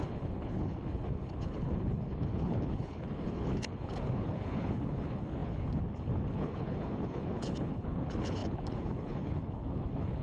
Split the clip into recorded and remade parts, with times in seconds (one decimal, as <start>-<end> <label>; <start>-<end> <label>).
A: 0.0-10.2 remade